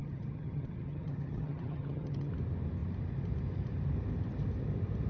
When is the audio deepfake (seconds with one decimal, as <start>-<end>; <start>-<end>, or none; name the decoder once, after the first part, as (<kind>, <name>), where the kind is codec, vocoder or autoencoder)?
0.0-2.3 (vocoder, HiFi-GAN)